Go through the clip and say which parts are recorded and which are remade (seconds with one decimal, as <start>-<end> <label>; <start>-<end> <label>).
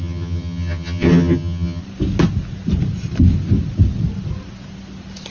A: 0.0-1.8 remade; 1.8-5.3 recorded